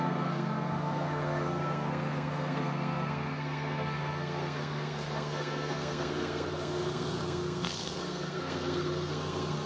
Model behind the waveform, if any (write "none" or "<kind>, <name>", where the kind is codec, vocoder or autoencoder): codec, SNAC